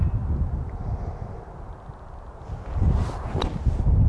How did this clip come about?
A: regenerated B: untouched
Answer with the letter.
B